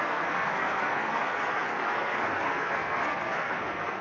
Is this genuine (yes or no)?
no